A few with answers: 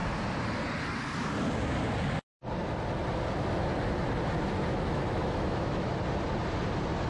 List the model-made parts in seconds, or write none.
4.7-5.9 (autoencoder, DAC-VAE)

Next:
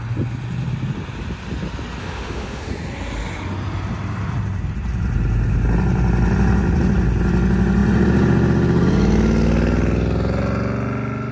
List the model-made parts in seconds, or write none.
2.0-2.7 (autoencoder, DAC-VAE)

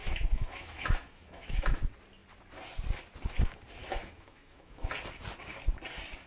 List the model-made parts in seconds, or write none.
0.0-1.8 (autoencoder, DAC-VAE); 3.8-4.9

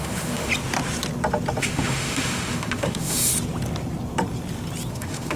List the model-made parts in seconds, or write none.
0.0-0.5 (autoencoder, DAC-VAE); 1.6-3.3; 4.9-5.4